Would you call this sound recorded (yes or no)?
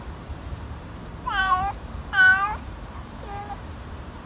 no